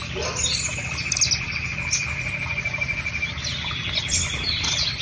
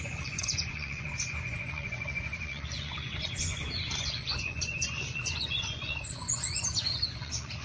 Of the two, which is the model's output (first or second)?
second